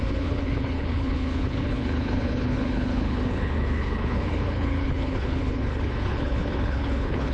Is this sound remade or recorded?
remade